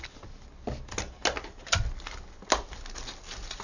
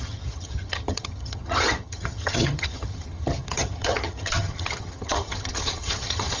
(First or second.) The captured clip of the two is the first